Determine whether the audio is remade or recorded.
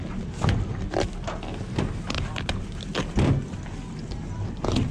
recorded